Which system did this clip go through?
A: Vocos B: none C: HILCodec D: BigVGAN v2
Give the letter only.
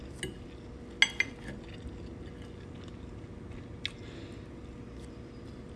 B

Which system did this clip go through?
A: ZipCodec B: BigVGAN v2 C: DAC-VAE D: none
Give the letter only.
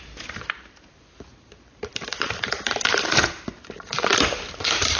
B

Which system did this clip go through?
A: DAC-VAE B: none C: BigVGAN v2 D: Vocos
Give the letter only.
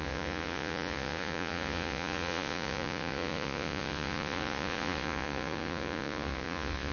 D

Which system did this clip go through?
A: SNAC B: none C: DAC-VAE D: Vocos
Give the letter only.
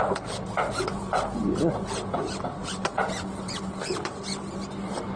B